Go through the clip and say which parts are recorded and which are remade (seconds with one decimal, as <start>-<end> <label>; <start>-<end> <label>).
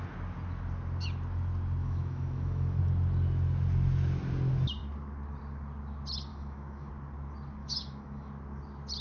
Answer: 0.0-1.8 recorded; 1.8-2.8 remade; 2.8-6.3 recorded; 6.3-6.9 remade; 6.9-7.6 recorded; 7.6-8.3 remade; 8.3-9.0 recorded